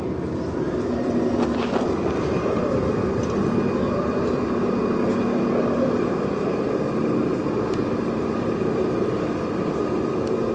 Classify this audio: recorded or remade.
recorded